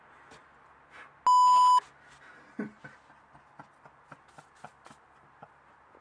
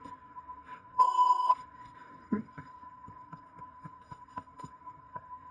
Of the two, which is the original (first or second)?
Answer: first